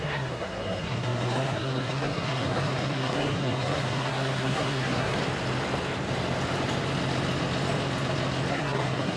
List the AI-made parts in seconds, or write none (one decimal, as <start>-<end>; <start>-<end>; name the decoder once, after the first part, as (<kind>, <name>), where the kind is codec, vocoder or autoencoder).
0.0-5.2 (codec, SNAC); 8.5-9.2